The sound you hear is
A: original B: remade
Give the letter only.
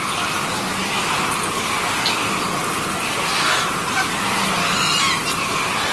A